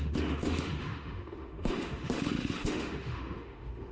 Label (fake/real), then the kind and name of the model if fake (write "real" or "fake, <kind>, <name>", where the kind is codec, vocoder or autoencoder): fake, autoencoder, DAC-VAE